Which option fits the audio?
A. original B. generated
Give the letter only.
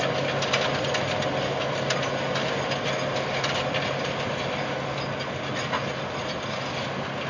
A